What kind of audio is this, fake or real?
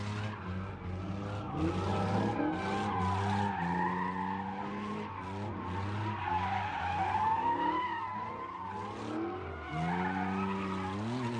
real